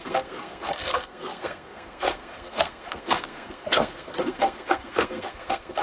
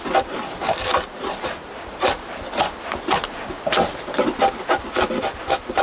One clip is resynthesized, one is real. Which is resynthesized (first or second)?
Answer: first